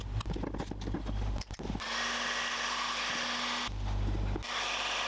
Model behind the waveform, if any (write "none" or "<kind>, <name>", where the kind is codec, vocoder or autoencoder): none